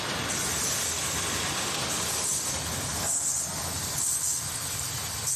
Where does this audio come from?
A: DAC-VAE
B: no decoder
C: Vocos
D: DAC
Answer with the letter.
B